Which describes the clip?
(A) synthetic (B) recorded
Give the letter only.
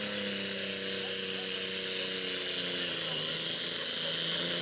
B